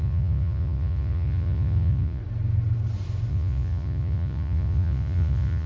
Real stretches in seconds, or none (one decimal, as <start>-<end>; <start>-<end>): 2.2-3.3